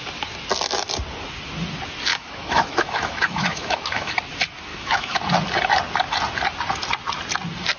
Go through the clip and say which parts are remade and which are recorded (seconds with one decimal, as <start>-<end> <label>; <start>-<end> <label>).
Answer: 0.0-2.1 recorded; 2.1-4.1 remade; 4.1-4.7 recorded; 4.7-5.2 remade; 5.2-7.8 recorded